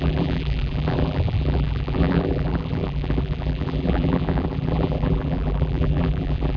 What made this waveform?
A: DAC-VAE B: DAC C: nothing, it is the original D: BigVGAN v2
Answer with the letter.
D